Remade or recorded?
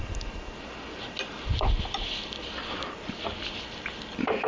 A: recorded